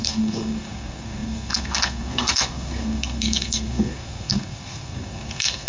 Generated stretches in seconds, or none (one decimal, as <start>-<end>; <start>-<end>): 0.0-5.7